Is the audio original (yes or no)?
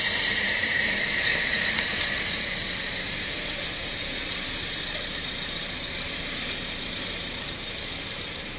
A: no